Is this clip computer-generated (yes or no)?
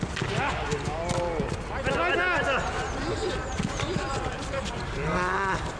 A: no